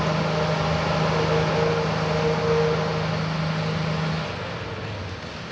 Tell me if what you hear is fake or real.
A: real